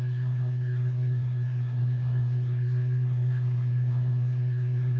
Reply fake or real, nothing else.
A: fake